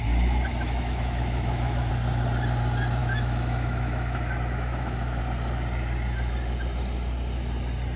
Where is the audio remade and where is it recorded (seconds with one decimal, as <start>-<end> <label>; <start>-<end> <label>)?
0.0-0.5 recorded; 0.5-1.9 remade; 1.9-3.0 recorded; 3.0-5.2 remade; 5.2-8.0 recorded